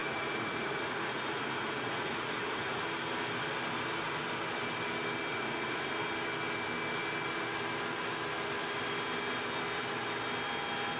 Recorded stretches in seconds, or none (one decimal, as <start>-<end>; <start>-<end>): 2.8-5.3; 5.9-11.0